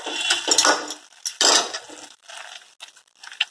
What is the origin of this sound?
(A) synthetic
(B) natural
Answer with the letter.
B